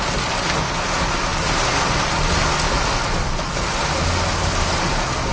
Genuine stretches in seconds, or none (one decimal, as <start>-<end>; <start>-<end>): 0.0-5.3